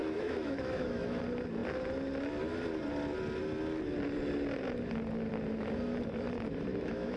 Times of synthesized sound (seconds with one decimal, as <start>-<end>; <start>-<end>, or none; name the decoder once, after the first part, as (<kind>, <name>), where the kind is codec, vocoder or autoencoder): 0.0-1.2 (autoencoder, DAC-VAE); 6.7-7.2